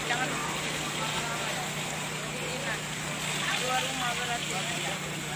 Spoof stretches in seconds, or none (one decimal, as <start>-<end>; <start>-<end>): none